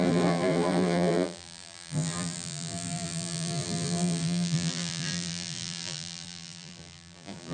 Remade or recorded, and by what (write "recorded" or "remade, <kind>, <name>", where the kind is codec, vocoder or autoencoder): remade, vocoder, BigVGAN v2